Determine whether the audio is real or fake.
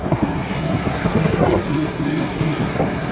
fake